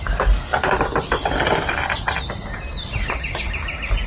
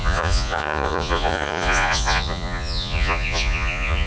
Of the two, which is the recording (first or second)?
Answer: first